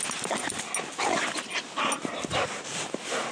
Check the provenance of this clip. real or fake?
real